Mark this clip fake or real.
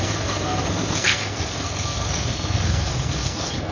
fake